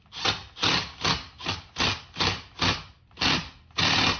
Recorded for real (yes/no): yes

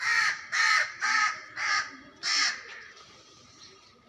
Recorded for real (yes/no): no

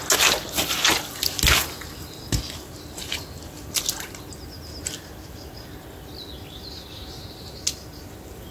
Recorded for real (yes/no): yes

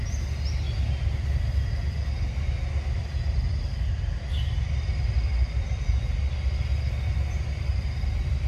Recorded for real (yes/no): yes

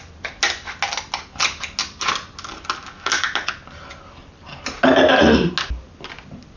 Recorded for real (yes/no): yes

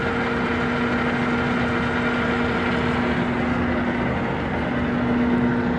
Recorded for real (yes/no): yes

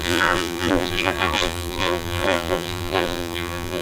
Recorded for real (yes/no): no